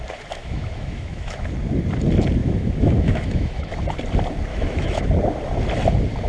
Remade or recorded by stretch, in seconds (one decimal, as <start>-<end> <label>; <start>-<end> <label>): 0.0-0.4 recorded; 0.4-1.5 remade; 1.5-2.4 recorded; 2.4-3.7 remade; 3.7-4.5 recorded; 4.5-5.1 remade; 5.1-6.3 recorded